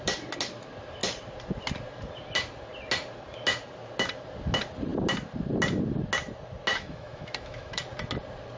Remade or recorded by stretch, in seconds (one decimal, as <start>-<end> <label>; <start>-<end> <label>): 0.0-6.7 recorded; 6.7-7.8 remade; 7.8-8.6 recorded